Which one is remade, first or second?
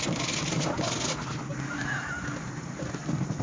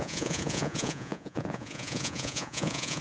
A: second